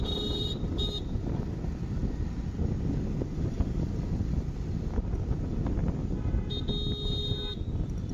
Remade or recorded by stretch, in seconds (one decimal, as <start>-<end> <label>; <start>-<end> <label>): 0.0-8.1 recorded